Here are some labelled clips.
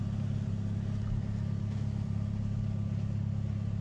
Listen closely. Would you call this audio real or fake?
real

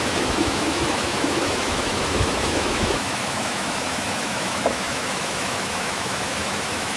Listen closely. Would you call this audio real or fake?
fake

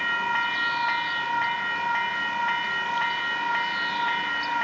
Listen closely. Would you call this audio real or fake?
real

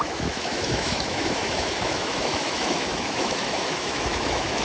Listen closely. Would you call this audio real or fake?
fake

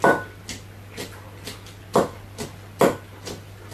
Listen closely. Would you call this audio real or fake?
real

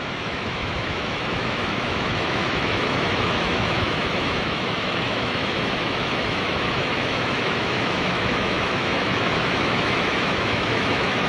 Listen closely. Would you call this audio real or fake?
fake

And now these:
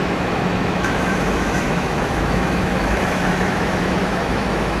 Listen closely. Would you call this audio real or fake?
fake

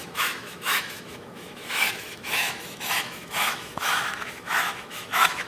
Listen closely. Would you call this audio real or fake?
fake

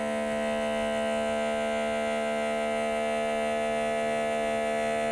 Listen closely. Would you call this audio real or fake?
real